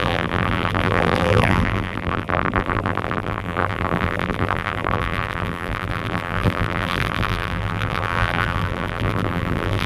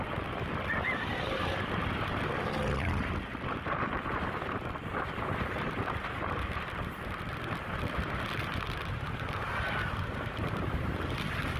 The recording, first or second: second